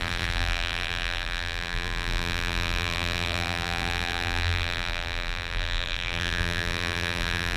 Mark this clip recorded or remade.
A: remade